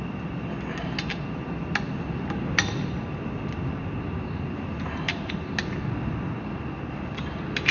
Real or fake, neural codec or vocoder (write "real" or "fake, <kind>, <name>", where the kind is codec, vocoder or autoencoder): real